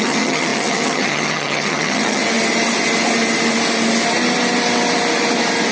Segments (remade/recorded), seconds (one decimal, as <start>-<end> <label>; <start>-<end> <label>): 0.0-2.2 remade; 2.2-5.7 recorded